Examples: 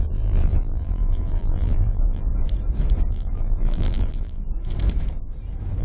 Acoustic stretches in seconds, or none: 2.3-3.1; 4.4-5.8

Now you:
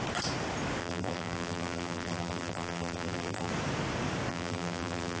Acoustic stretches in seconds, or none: 0.0-0.8; 3.5-4.3

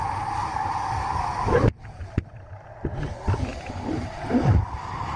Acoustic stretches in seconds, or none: 0.0-0.4; 0.9-3.5; 4.1-5.2

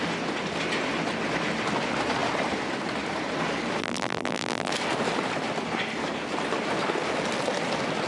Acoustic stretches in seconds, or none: 0.0-3.8; 4.7-8.1